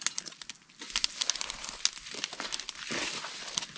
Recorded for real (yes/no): yes